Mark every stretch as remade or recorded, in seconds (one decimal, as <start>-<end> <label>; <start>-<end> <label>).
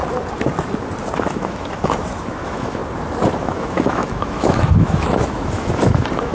0.0-1.2 recorded; 1.2-2.8 remade; 2.8-3.4 recorded; 3.4-6.3 remade